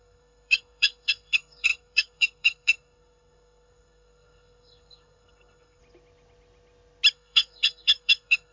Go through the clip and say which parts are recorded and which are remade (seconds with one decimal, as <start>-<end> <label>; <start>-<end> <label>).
0.0-5.8 remade; 5.8-7.1 recorded; 7.1-8.5 remade